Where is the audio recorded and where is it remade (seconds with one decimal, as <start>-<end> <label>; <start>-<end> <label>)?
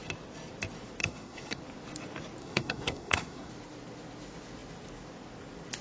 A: 0.0-1.0 recorded; 1.0-1.6 remade; 1.6-2.4 recorded; 2.4-3.5 remade; 3.5-5.8 recorded